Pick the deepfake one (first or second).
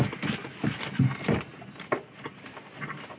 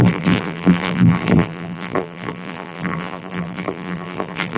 second